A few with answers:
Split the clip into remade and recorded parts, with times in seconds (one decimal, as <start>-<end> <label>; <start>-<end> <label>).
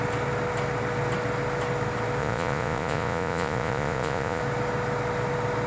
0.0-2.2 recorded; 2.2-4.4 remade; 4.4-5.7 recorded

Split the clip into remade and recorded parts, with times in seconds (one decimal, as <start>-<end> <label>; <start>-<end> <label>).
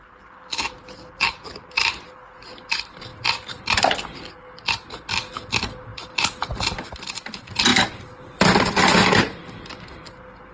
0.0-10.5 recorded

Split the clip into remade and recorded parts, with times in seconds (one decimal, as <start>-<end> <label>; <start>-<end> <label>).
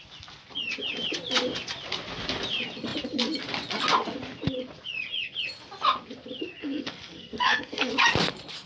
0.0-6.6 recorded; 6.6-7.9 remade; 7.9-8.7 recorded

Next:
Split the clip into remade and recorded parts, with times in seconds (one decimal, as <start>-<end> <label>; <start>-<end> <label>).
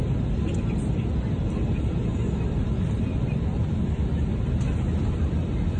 0.0-2.1 recorded; 2.1-5.8 remade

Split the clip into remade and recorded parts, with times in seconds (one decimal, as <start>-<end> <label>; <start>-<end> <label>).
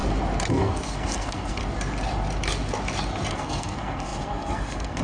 0.0-0.5 recorded; 0.5-1.6 remade; 1.6-3.3 recorded; 3.3-5.0 remade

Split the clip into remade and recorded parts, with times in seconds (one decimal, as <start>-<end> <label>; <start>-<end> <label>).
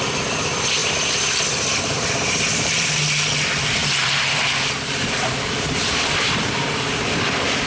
0.0-0.8 recorded; 0.8-2.9 remade; 2.9-3.8 recorded; 3.8-7.2 remade; 7.2-7.7 recorded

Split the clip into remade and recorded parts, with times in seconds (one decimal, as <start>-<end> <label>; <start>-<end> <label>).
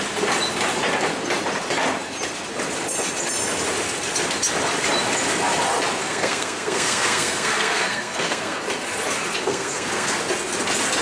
0.0-6.0 recorded; 6.0-8.6 remade; 8.6-9.4 recorded; 9.4-10.2 remade; 10.2-11.0 recorded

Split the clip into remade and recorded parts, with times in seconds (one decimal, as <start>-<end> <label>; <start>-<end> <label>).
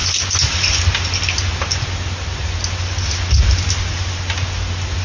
0.0-5.0 recorded